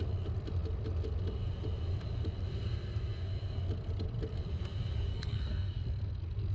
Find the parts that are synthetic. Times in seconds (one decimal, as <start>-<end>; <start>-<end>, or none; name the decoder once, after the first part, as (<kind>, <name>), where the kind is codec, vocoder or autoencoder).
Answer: 5.1-5.8 (codec, SNAC)